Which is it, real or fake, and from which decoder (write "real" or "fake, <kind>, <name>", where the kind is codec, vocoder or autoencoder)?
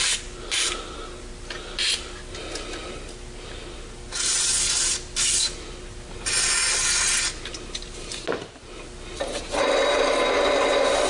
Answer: real